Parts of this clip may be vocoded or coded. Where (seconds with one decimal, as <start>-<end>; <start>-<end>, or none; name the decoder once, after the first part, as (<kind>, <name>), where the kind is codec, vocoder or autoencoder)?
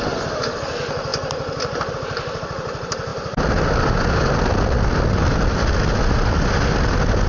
none